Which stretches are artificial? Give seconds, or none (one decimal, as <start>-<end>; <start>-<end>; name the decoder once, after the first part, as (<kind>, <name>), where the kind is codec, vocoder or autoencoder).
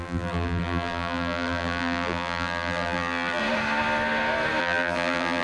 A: 0.0-3.4 (vocoder, BigVGAN v2); 4.6-5.4